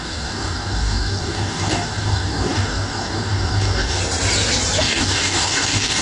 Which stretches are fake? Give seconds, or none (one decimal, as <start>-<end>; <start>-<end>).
0.0-4.0; 4.8-6.0